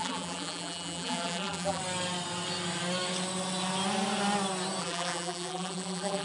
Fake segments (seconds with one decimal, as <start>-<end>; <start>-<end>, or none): 0.0-1.8; 4.8-6.2